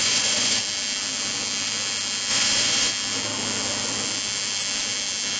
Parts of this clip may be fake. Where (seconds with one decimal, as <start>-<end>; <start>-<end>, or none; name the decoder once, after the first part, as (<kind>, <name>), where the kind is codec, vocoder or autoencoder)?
0.0-0.6 (vocoder, Vocos); 2.3-2.9